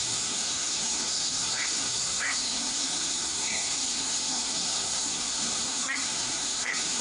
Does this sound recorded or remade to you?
remade